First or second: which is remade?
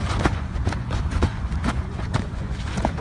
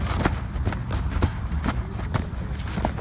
first